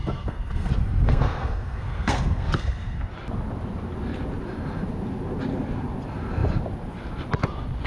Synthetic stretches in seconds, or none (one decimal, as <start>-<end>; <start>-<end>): 0.0-3.0